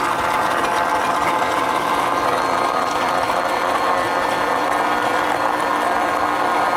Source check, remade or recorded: recorded